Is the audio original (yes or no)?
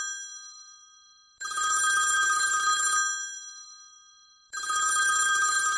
no